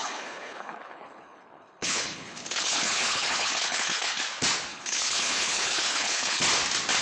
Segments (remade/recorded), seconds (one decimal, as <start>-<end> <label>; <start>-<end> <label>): 0.0-4.2 remade; 4.2-4.7 recorded; 4.7-6.4 remade; 6.4-7.0 recorded